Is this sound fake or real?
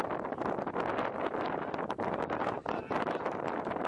real